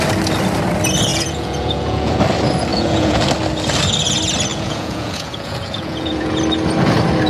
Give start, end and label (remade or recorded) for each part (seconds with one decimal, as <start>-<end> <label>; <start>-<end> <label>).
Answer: 0.0-1.1 recorded; 1.1-2.2 remade; 2.2-2.7 recorded; 2.7-3.2 remade; 3.2-4.5 recorded; 4.5-6.4 remade; 6.4-7.3 recorded